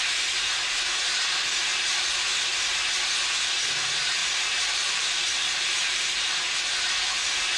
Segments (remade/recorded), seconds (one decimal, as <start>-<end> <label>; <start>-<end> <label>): 0.0-1.7 recorded; 1.7-2.8 remade; 2.8-4.2 recorded; 4.2-6.6 remade; 6.6-7.6 recorded